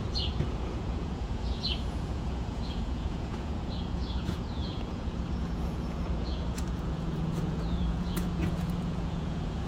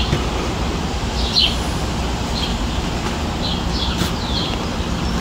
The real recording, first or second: second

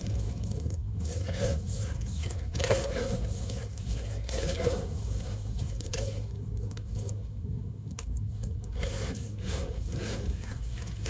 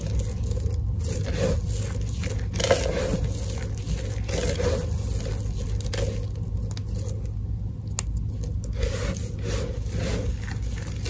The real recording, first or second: second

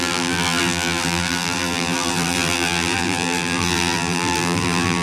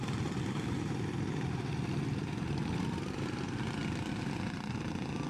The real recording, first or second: second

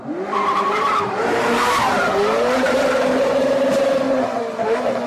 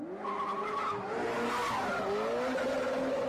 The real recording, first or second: second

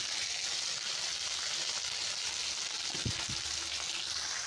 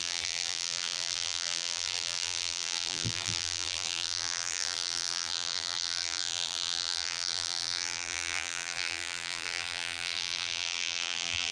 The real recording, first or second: first